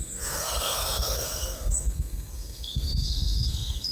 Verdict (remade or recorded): remade